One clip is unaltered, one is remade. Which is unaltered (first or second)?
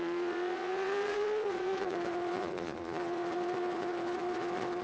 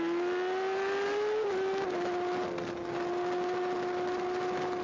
second